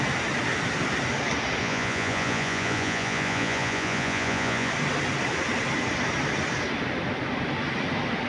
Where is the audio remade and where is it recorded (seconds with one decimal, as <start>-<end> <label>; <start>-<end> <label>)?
0.0-1.6 recorded; 1.6-4.7 remade; 4.7-8.3 recorded